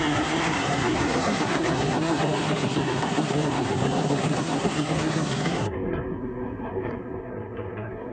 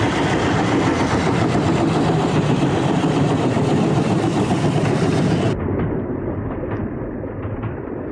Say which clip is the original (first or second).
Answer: second